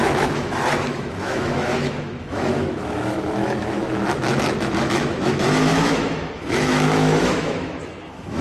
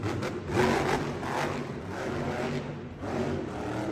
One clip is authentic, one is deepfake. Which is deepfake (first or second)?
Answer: first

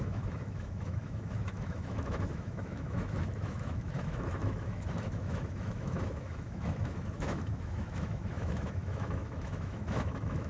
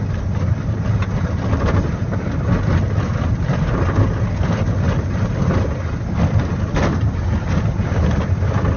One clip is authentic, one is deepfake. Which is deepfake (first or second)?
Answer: first